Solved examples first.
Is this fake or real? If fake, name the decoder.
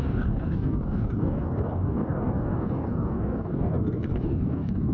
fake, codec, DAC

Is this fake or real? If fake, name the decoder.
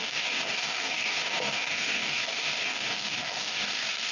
fake, codec, DAC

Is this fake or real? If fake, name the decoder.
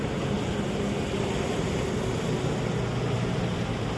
real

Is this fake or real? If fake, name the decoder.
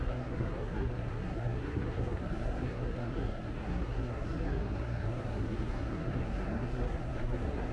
fake, codec, SNAC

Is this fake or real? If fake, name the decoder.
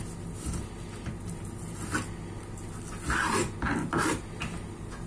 real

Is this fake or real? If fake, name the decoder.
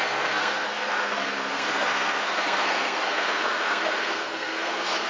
fake, codec, SNAC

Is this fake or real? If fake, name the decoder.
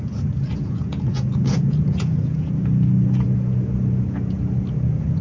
fake, vocoder, Vocos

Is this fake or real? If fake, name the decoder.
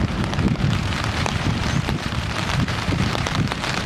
fake, vocoder, BigVGAN v2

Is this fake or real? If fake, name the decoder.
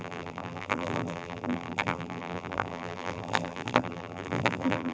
fake, vocoder, BigVGAN v2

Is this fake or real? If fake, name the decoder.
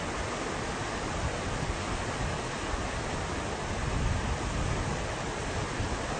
real